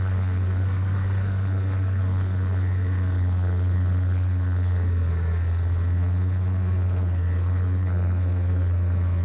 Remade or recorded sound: remade